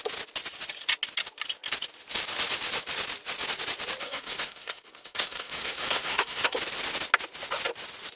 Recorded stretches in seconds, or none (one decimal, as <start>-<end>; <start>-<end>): 0.0-4.0; 6.6-8.2